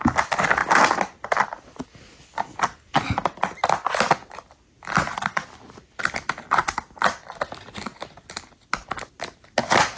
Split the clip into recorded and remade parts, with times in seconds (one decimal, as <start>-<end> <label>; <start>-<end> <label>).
0.0-10.0 recorded